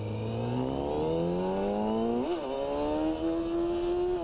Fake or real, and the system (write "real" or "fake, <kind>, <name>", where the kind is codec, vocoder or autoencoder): real